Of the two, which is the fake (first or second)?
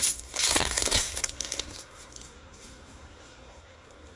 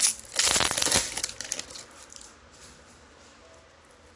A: first